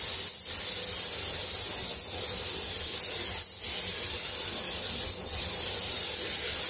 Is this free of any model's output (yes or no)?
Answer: yes